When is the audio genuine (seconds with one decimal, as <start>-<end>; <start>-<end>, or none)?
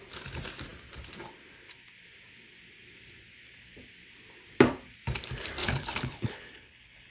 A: 0.0-5.6